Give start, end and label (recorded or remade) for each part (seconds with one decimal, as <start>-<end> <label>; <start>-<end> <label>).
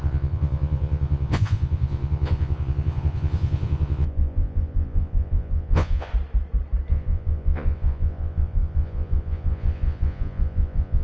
0.0-6.1 remade; 6.1-6.9 recorded; 6.9-11.0 remade